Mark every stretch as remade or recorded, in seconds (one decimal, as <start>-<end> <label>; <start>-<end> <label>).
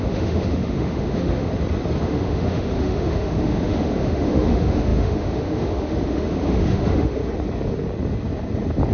0.0-1.5 remade; 1.5-2.0 recorded; 2.0-7.2 remade; 7.2-8.9 recorded